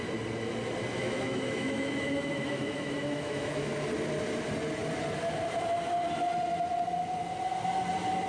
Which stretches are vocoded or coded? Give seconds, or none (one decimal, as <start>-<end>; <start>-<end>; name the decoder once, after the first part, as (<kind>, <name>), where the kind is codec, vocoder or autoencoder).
1.0-3.7 (autoencoder, DAC-VAE)

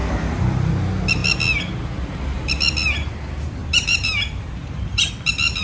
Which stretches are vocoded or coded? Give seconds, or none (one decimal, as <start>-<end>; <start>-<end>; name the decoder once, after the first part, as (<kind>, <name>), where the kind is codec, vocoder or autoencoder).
3.6-5.0 (vocoder, BigVGAN v2)

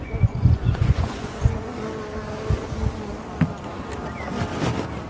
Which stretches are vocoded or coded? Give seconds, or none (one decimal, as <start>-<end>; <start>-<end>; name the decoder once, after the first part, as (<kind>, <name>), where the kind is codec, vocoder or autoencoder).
0.0-1.7 (vocoder, Vocos)

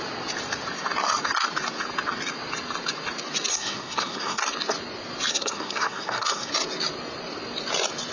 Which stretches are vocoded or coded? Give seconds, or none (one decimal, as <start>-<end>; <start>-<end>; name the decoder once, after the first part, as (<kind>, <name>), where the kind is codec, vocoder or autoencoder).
3.5-4.4 (codec, SNAC); 5.3-6.5

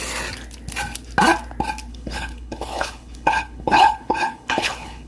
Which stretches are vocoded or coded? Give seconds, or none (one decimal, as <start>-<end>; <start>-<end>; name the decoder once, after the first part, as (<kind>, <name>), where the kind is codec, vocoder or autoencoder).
1.9-5.1 (codec, HILCodec)